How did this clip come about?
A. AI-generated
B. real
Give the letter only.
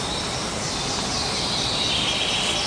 B